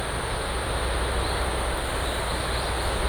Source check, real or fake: real